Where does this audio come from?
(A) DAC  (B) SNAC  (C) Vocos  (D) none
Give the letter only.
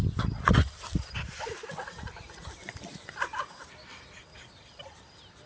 D